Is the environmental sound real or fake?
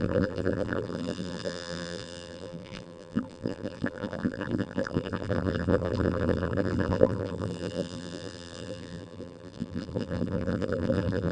fake